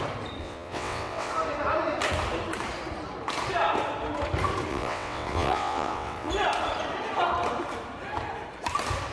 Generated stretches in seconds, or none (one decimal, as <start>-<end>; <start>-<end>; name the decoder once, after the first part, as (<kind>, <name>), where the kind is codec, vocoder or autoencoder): 0.4-1.3 (vocoder, WaveNeXt); 4.7-6.3